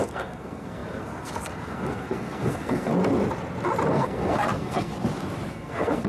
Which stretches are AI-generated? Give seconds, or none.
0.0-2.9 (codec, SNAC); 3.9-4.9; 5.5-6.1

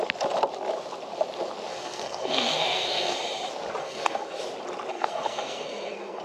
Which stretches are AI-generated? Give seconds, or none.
1.7-3.2 (codec, SNAC); 3.8-4.4; 4.9-6.2

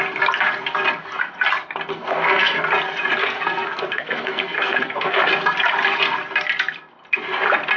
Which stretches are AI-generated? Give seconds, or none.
1.9-2.6 (codec, SNAC); 3.2-5.2

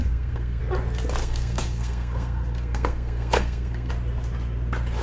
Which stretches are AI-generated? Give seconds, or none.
0.0-0.6 (codec, SNAC); 1.2-3.9

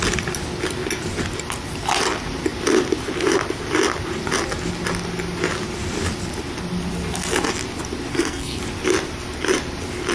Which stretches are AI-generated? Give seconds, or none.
8.1-8.6 (codec, SNAC)